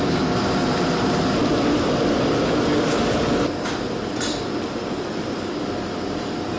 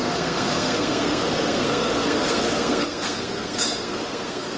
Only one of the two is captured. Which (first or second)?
first